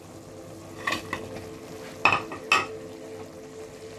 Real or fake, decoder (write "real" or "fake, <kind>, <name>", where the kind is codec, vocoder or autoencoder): real